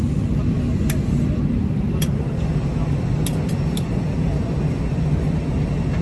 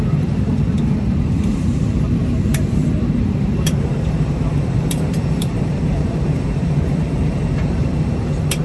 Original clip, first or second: first